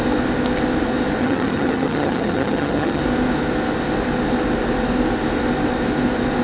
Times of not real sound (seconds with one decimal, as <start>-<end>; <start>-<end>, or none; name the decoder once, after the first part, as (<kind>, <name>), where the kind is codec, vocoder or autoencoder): 1.2-3.0 (vocoder, HiFi-GAN)